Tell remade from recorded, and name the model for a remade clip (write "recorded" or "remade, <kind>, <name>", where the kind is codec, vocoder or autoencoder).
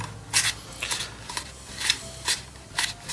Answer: recorded